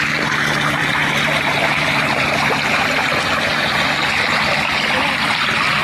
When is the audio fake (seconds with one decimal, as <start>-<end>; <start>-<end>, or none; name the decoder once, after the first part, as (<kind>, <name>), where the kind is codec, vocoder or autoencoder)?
0.8-3.9 (vocoder, BigVGAN v2)